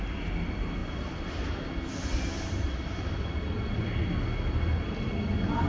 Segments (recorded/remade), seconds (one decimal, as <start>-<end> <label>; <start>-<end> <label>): 0.0-5.7 recorded